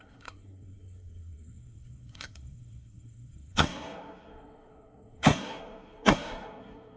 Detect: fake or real fake